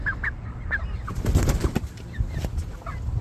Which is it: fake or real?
real